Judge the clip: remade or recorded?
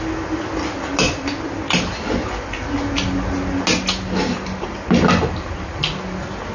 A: recorded